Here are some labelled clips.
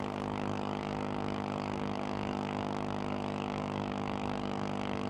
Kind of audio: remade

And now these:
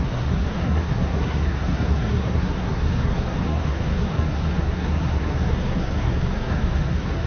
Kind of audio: remade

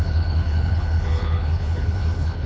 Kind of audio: remade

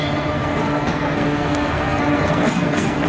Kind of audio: remade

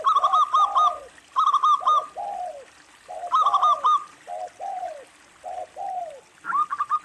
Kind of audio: recorded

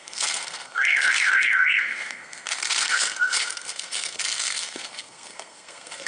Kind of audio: remade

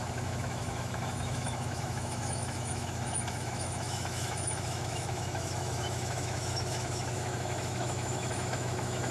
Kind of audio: remade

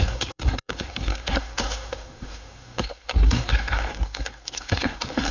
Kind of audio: remade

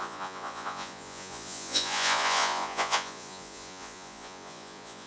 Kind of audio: remade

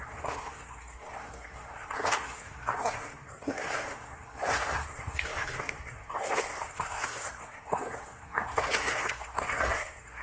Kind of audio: remade